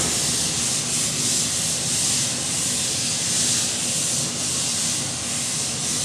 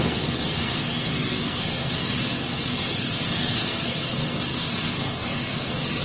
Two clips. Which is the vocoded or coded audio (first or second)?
second